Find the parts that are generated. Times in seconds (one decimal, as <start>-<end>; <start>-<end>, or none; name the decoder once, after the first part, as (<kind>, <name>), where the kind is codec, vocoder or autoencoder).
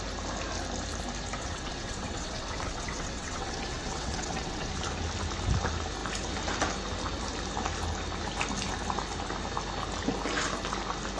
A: 1.4-4.7 (vocoder, WaveNeXt)